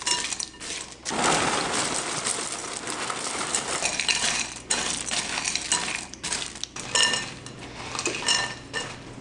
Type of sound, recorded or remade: recorded